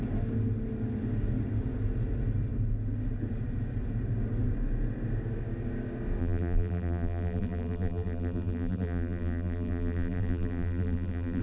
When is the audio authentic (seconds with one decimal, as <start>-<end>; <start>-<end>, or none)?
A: 0.0-6.2